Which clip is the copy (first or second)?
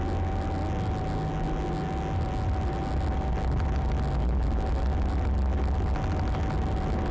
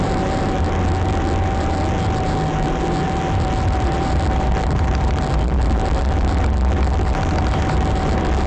second